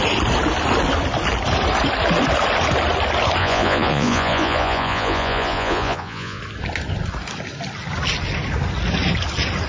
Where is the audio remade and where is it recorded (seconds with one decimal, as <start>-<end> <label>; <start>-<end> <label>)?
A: 0.0-3.4 recorded; 3.4-6.4 remade; 6.4-9.7 recorded